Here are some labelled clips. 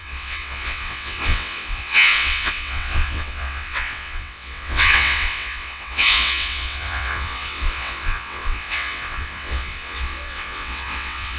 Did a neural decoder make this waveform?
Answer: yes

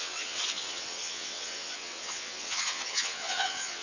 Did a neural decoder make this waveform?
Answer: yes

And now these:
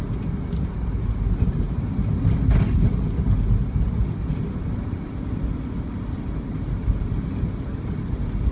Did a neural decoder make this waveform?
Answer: no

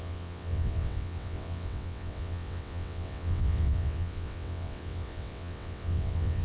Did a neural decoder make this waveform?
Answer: yes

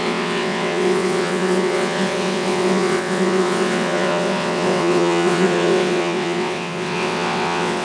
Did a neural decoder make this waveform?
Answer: yes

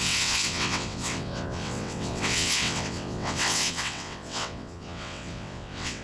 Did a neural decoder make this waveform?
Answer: yes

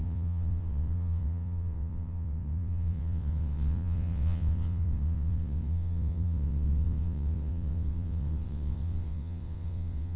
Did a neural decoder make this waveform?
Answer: yes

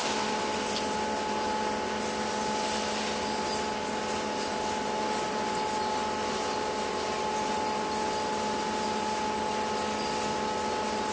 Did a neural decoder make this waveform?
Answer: no